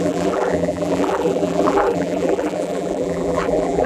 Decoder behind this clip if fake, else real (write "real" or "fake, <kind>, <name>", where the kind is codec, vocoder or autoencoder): fake, vocoder, BigVGAN v2